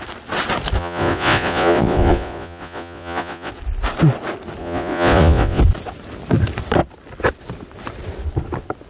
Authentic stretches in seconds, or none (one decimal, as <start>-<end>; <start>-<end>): 0.0-0.8; 3.5-4.6; 5.6-8.9